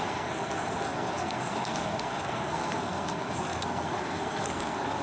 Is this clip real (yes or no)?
no